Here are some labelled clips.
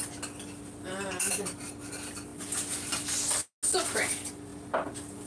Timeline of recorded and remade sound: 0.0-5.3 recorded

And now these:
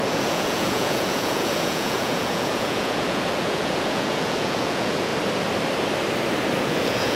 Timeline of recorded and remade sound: 0.0-5.1 remade; 5.1-6.6 recorded; 6.6-7.2 remade